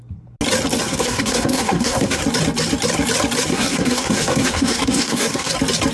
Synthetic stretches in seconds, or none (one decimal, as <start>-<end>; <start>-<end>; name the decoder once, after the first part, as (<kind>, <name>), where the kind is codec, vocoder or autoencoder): 0.9-2.2 (codec, SNAC); 3.5-5.5